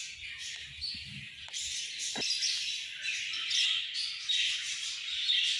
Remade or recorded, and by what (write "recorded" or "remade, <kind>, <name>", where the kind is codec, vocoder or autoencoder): recorded